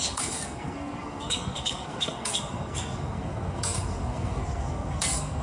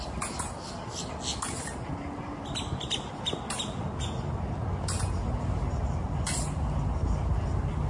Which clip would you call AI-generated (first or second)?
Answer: first